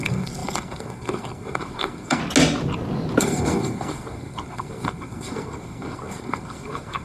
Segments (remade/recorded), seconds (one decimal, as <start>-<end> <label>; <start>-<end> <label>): 0.0-2.2 remade; 2.2-3.2 recorded; 3.2-7.0 remade